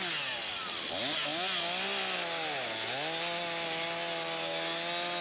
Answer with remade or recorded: recorded